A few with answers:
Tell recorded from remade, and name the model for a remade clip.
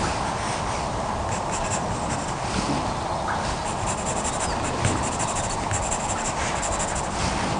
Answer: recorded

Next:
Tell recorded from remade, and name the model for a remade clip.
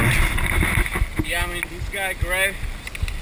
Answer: recorded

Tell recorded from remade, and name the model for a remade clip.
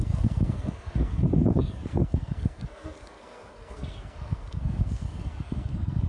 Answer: remade, codec, SNAC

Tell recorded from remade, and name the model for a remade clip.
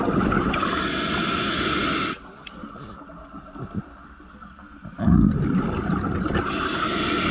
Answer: recorded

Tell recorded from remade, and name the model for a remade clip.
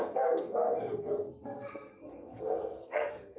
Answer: remade, codec, SNAC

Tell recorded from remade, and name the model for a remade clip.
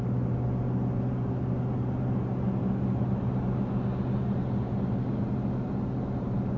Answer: recorded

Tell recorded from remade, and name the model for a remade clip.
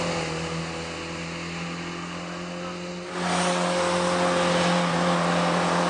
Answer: recorded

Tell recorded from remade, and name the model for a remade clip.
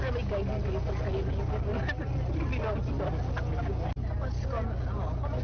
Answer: recorded